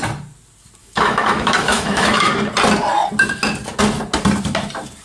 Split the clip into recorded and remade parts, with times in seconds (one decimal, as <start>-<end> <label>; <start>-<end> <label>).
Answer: 0.0-0.8 recorded; 0.8-2.3 remade; 2.3-5.0 recorded